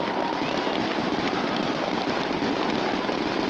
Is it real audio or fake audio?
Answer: fake